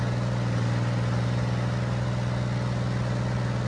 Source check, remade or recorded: recorded